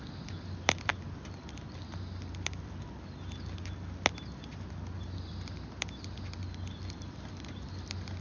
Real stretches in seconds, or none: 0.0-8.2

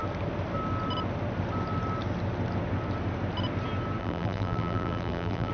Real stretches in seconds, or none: 0.0-4.0